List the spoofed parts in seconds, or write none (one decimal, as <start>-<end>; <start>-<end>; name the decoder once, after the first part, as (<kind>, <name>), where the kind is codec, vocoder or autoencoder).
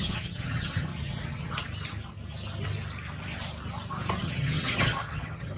0.0-0.9 (vocoder, HiFi-GAN); 4.2-5.6